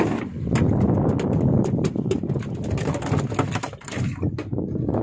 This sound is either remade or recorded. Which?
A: recorded